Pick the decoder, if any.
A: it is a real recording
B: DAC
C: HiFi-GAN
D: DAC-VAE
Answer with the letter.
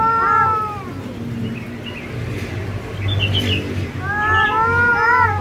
A